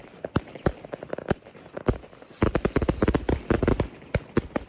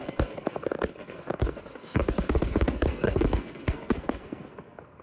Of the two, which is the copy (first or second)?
second